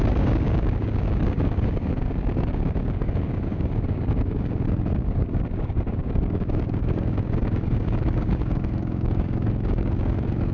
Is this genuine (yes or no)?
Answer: no